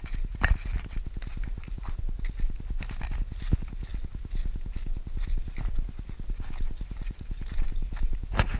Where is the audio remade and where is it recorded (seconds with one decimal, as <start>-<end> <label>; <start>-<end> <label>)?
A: 0.0-8.6 recorded